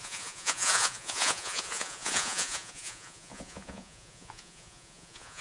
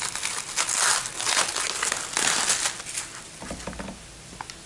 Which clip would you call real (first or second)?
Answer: second